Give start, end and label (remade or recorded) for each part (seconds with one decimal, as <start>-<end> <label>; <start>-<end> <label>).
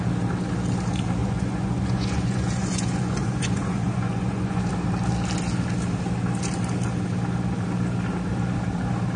0.0-1.2 recorded; 1.2-4.6 remade; 4.6-9.2 recorded